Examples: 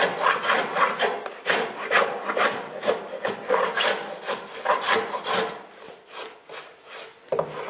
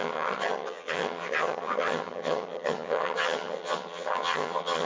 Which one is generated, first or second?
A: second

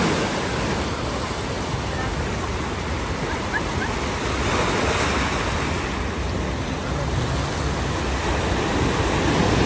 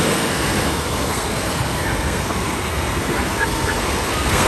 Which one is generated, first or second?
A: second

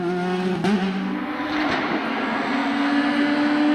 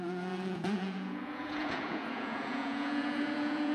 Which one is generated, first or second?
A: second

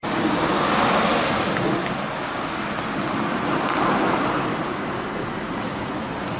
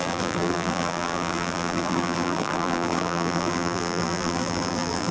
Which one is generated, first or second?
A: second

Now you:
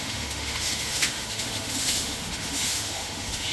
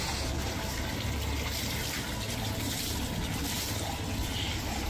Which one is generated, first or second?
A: first